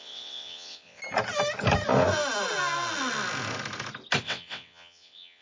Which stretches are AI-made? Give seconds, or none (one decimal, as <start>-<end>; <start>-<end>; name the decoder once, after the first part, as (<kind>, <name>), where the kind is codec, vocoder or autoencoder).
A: 0.0-1.0 (vocoder, WaveNeXt); 4.2-5.4